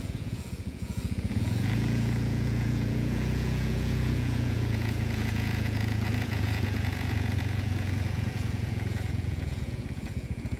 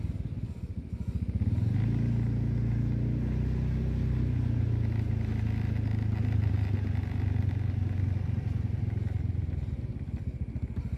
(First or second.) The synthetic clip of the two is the first